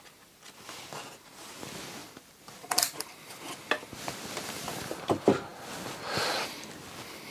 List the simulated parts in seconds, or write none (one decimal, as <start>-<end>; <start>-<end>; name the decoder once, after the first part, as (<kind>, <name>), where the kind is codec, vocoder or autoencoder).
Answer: 2.0-5.0 (vocoder, BigVGAN v2)